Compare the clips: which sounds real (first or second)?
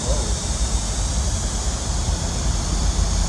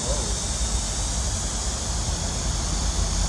second